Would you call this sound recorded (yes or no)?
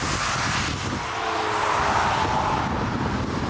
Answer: yes